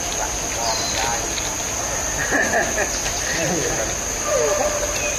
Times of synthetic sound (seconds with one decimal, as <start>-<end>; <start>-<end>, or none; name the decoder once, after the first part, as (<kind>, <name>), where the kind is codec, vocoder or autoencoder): none